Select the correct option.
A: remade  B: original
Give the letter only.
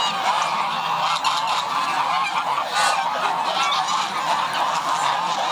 B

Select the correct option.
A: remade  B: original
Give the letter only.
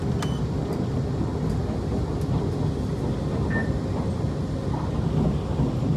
B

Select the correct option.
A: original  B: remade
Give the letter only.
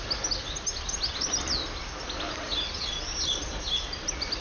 A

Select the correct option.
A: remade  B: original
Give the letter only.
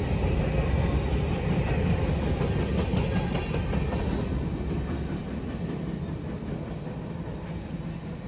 B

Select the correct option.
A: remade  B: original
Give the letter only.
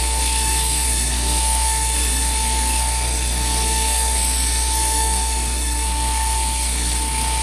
A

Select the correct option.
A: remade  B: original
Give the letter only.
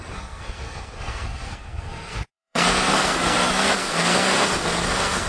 A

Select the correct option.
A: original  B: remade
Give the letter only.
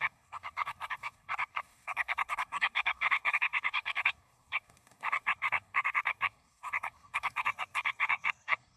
B